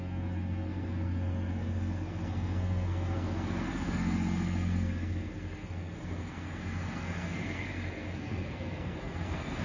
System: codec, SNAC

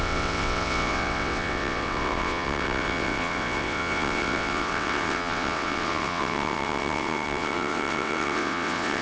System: vocoder, WaveNeXt